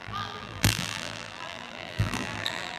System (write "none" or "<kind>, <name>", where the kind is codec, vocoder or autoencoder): vocoder, BigVGAN v2